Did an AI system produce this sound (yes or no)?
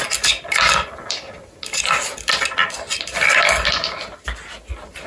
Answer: no